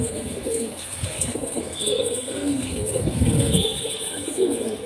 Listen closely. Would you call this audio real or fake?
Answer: fake